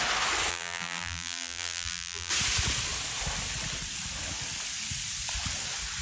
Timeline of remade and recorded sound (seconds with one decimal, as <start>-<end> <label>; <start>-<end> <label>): 0.0-0.5 recorded; 0.5-2.3 remade; 2.3-6.0 recorded